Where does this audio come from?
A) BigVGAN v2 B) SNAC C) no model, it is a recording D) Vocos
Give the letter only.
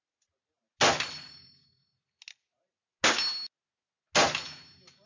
C